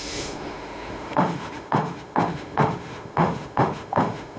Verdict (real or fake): fake